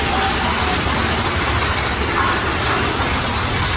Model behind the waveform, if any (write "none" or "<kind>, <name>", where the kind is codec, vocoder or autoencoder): none